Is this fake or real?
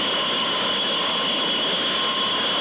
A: real